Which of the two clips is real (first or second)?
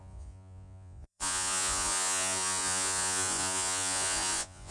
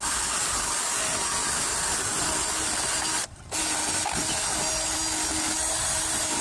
second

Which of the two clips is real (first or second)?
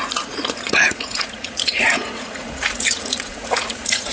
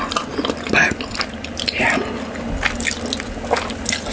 second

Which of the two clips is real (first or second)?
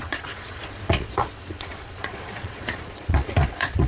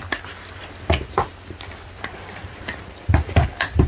second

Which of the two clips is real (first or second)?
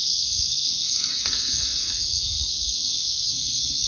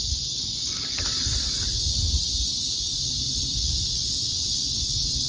second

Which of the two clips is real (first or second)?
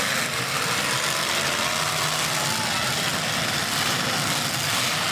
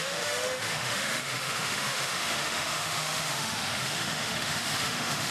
first